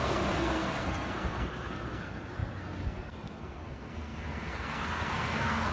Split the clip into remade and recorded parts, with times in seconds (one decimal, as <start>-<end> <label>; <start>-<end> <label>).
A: 0.0-5.7 remade